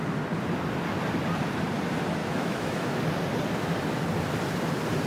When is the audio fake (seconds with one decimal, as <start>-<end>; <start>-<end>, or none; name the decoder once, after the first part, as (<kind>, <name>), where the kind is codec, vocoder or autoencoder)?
2.2-3.0 (autoencoder, DAC-VAE)